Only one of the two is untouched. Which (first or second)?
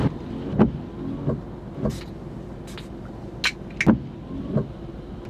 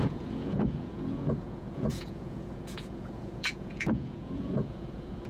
first